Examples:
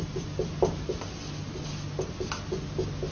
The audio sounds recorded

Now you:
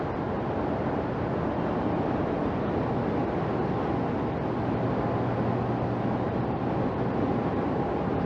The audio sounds recorded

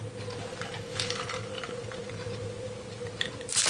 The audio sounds recorded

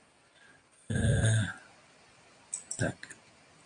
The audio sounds recorded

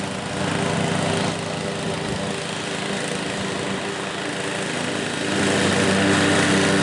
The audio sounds recorded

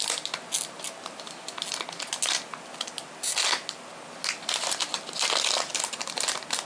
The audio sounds recorded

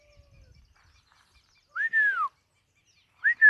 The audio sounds recorded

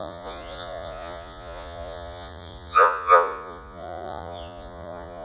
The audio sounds remade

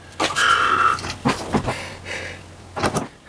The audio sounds recorded